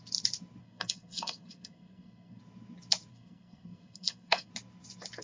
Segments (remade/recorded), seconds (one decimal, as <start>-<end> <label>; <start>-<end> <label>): 0.0-0.6 recorded; 0.6-2.4 remade; 2.4-3.1 recorded; 3.1-4.5 remade; 4.5-5.2 recorded